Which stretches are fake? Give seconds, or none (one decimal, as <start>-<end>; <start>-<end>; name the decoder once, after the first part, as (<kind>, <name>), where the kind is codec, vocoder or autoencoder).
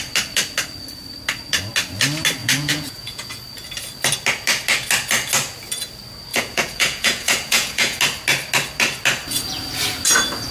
2.4-3.4 (vocoder, Vocos); 6.3-8.0